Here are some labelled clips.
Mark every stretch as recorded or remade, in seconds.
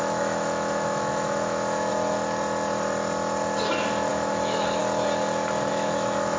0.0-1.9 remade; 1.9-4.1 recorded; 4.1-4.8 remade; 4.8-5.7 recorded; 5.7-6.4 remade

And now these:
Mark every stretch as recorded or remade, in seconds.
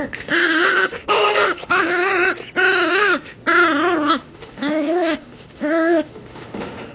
0.0-2.1 remade; 2.1-2.9 recorded; 2.9-3.4 remade; 3.4-4.1 recorded; 4.1-6.9 remade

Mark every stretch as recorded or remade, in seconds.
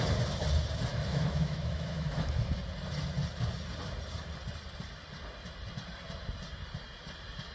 0.0-0.9 recorded; 0.9-2.6 remade; 2.6-7.5 recorded